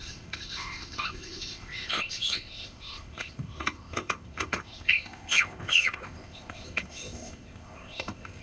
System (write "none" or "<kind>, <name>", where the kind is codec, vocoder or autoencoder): codec, ZipCodec